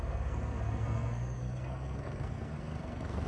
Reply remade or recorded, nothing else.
remade